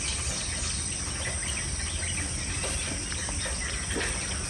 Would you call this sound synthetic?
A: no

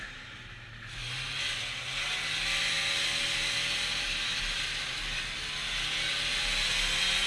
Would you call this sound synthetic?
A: no